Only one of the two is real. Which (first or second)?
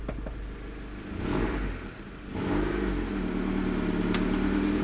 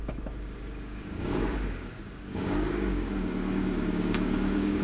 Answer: first